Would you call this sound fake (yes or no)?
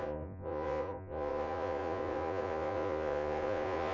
yes